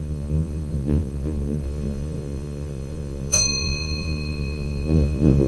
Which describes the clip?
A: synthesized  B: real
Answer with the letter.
A